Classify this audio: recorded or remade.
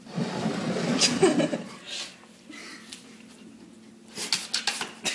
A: recorded